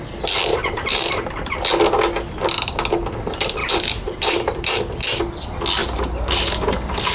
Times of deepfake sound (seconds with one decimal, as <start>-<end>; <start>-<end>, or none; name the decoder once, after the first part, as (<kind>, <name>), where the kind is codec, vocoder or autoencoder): 0.5-1.1 (vocoder, BigVGAN v2); 3.6-4.8; 5.8-7.1